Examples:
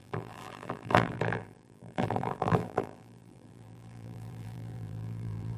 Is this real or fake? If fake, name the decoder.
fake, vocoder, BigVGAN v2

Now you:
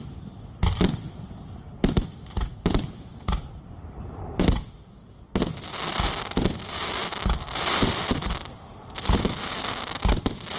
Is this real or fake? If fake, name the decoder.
real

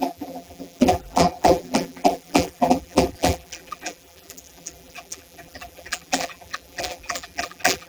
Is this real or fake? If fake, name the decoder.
fake, vocoder, BigVGAN v2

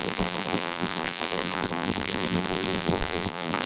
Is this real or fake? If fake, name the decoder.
fake, vocoder, BigVGAN v2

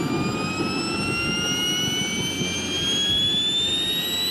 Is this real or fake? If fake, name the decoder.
real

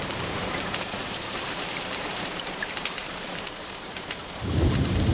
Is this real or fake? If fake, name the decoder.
fake, vocoder, BigVGAN v2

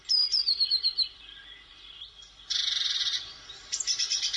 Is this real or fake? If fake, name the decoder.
fake, vocoder, BigVGAN v2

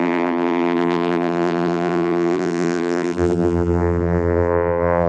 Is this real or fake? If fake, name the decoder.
fake, vocoder, BigVGAN v2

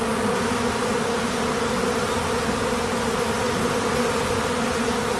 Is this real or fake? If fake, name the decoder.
real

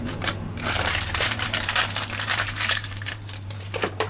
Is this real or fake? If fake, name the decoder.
fake, vocoder, BigVGAN v2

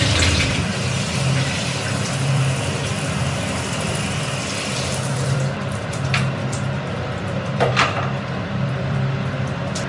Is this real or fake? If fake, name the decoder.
fake, vocoder, BigVGAN v2